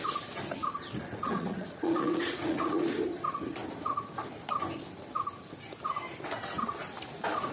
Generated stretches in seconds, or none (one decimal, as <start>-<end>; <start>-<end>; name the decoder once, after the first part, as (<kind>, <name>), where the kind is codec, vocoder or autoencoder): 1.1-2.8 (vocoder, Vocos)